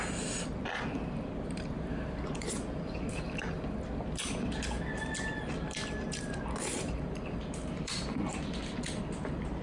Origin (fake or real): fake